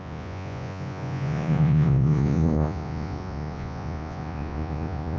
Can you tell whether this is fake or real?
fake